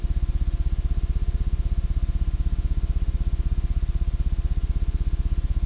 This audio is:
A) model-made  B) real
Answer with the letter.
B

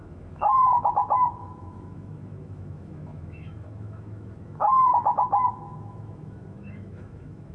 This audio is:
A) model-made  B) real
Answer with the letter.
A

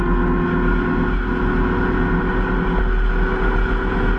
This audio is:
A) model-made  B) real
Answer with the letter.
B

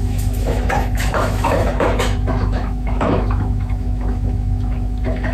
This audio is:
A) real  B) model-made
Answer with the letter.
B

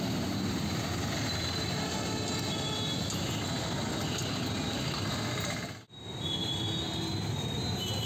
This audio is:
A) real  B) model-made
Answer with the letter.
A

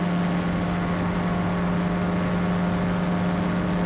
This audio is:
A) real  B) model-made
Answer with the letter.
A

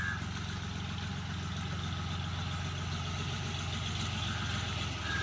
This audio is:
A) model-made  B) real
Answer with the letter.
B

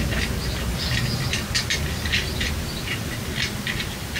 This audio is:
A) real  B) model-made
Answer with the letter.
A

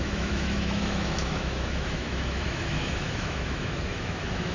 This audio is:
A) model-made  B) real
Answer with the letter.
A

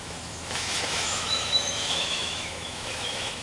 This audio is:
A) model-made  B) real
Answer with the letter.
A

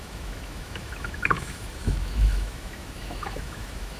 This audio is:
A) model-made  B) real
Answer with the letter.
A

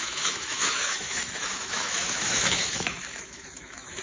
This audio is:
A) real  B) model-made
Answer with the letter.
B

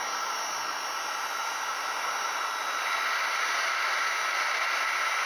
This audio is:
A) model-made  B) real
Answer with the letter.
B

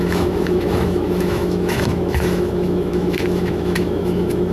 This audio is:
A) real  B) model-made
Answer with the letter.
B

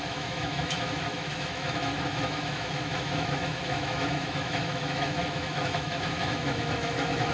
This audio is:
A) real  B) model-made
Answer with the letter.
B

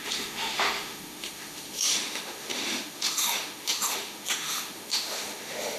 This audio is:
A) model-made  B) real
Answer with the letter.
A